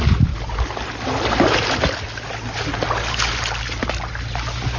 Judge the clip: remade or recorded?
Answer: recorded